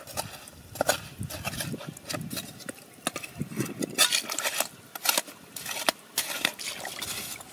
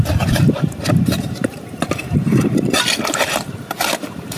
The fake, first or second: second